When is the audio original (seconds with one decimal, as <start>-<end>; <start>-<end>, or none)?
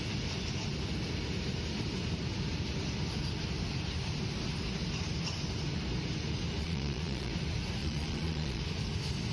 0.0-6.6; 7.3-7.8; 8.6-9.3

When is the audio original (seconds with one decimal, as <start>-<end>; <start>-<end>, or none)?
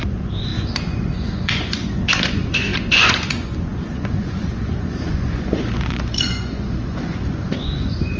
none